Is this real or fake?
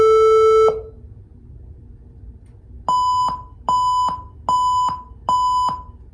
real